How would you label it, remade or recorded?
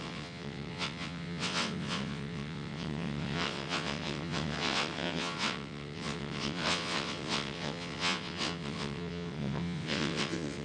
remade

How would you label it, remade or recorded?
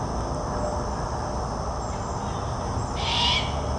recorded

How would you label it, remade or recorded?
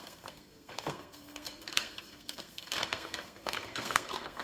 remade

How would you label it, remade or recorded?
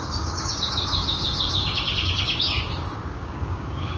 remade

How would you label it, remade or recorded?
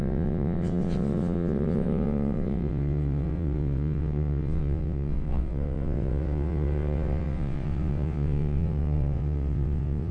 remade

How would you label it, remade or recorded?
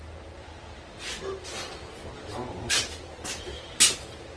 recorded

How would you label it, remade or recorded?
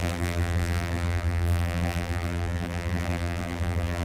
remade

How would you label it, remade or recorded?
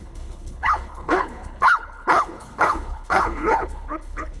remade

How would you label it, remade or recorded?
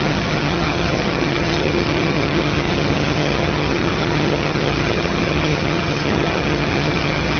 remade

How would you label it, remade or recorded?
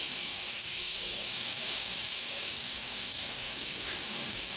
remade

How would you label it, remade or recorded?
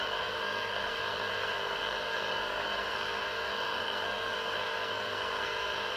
remade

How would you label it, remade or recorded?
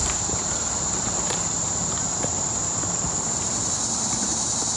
recorded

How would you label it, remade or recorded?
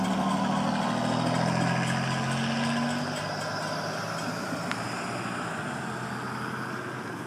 recorded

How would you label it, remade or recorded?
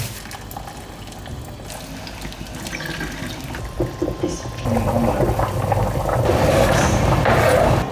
recorded